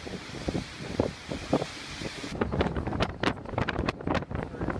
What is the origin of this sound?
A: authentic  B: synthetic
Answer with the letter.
B